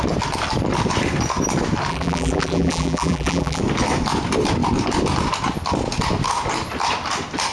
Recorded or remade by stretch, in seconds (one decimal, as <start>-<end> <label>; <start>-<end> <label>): 0.0-1.9 recorded; 1.9-3.6 remade; 3.6-7.5 recorded